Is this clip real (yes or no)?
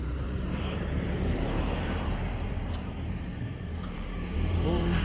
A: no